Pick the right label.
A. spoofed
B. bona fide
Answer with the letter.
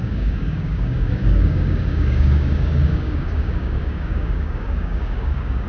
A